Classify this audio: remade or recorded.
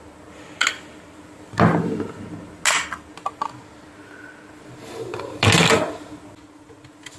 recorded